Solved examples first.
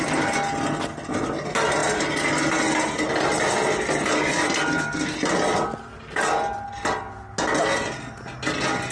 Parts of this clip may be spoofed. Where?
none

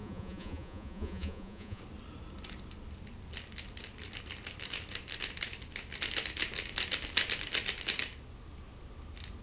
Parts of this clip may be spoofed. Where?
0.0-1.8 (vocoder, Vocos)

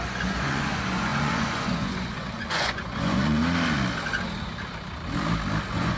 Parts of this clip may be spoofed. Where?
0.0-3.4 (vocoder, Vocos); 5.6-6.0

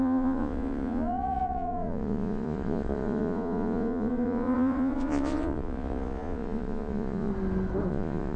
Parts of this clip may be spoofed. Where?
0.0-7.3 (vocoder, Vocos); 7.9-8.4

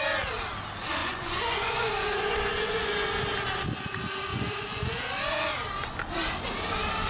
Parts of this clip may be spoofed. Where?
1.0-3.1 (vocoder, Vocos); 4.3-5.0

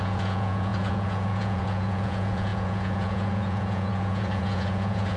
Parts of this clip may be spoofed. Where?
0.0-5.2 (vocoder, Vocos)

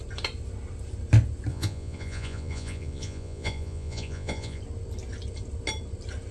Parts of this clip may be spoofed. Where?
1.5-4.6 (vocoder, Vocos)

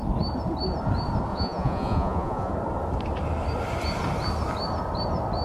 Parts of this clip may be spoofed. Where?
1.3-2.5 (vocoder, Vocos)